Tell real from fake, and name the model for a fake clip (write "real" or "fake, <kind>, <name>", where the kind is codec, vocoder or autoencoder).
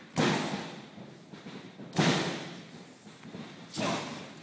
real